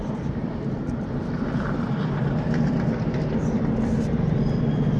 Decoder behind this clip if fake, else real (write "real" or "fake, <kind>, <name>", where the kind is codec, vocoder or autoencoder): fake, vocoder, BigVGAN v2